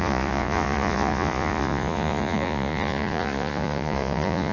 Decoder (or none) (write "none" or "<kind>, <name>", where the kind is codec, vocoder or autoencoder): vocoder, Vocos